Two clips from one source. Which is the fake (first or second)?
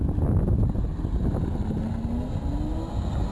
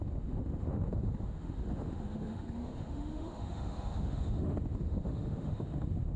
second